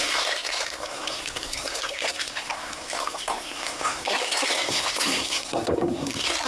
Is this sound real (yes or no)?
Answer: no